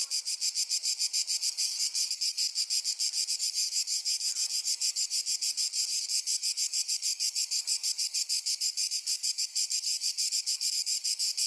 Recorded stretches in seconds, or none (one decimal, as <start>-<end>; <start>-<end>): 0.0-1.4; 2.5-3.3; 5.2-5.9